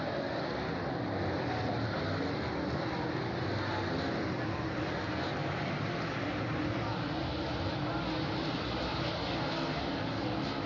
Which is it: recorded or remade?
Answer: recorded